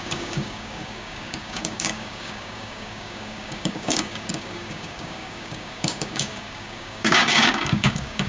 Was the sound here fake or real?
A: fake